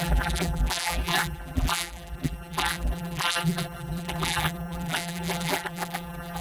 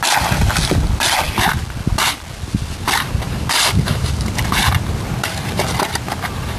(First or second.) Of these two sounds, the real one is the second